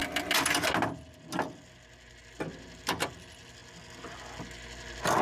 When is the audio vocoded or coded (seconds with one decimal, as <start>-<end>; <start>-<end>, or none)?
none